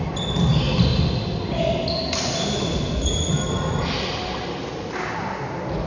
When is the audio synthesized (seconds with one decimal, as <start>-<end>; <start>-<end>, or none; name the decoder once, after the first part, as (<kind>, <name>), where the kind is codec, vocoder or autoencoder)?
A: none